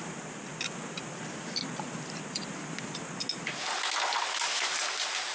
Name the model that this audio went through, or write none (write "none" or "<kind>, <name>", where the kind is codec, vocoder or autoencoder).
none